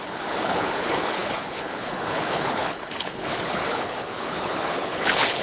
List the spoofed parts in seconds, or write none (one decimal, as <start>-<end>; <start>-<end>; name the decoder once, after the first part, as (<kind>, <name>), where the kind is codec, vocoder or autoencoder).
0.0-5.4 (codec, HILCodec)